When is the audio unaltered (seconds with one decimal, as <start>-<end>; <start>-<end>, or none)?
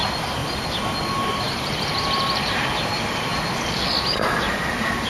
0.4-1.1; 3.3-4.1